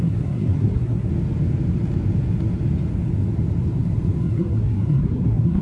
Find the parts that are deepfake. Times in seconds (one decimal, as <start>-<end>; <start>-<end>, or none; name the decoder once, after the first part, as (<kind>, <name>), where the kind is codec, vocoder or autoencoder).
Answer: 0.0-1.1 (codec, SNAC); 4.2-5.6